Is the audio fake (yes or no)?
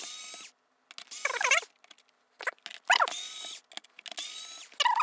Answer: no